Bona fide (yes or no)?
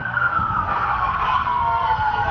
no